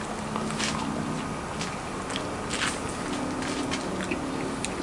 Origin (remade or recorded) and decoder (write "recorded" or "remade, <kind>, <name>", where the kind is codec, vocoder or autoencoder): recorded